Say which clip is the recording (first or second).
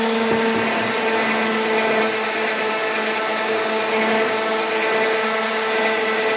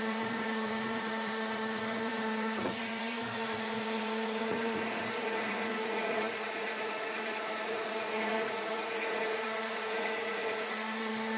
first